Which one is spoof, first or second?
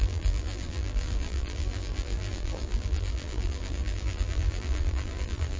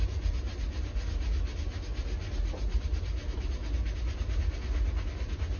first